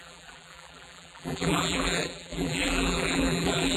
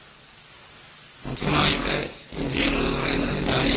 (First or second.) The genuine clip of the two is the second